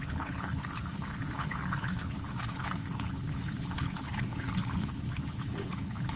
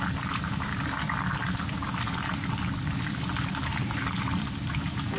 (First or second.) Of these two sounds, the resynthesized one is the first